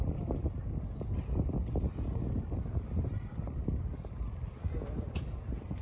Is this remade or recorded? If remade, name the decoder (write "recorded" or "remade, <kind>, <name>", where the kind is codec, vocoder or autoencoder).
recorded